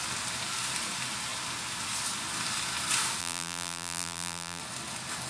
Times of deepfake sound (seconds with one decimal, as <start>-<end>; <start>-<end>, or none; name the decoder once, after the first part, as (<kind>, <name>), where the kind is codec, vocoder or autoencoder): 3.2-4.6 (vocoder, BigVGAN v2)